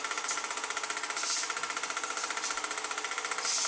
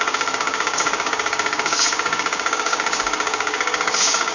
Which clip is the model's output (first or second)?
second